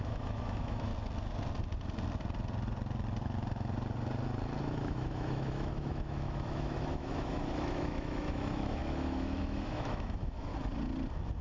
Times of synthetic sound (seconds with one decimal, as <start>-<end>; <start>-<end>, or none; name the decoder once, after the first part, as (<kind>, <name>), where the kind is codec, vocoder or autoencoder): 0.0-0.9 (autoencoder, DAC-VAE); 4.6-10.5